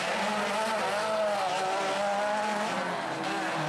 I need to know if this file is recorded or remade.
recorded